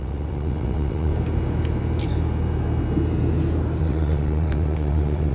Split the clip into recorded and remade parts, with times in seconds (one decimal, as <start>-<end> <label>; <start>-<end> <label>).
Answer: 0.0-1.1 remade; 1.1-3.8 recorded; 3.8-5.3 remade

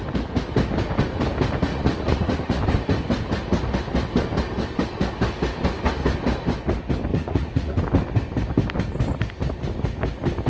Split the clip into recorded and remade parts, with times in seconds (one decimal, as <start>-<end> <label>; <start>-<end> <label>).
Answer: 0.0-1.7 recorded; 1.7-2.6 remade; 2.6-7.1 recorded; 7.1-7.8 remade; 7.8-10.5 recorded